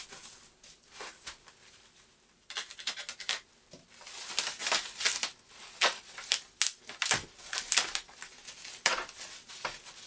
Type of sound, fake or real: real